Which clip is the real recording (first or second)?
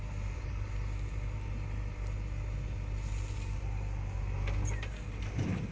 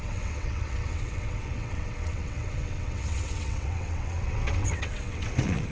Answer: first